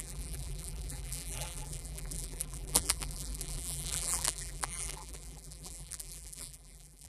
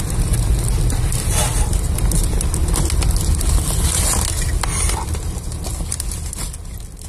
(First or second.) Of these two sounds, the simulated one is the first